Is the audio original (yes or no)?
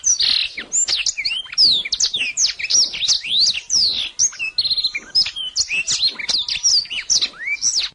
yes